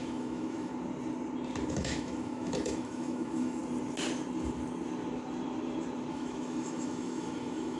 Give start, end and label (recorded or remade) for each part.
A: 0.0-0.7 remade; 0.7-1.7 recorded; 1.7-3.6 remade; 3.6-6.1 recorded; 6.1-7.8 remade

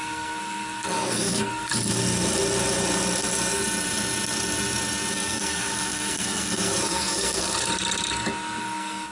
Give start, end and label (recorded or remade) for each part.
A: 0.0-1.7 remade; 1.7-5.1 recorded; 5.1-7.5 remade; 7.5-8.6 recorded; 8.6-9.1 remade

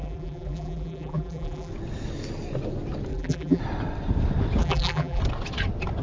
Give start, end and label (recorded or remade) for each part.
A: 0.0-1.7 remade; 1.7-3.1 recorded; 3.1-3.6 remade; 3.6-4.6 recorded; 4.6-5.2 remade; 5.2-6.0 recorded

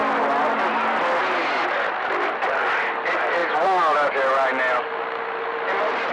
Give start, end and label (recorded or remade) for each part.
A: 0.0-6.1 recorded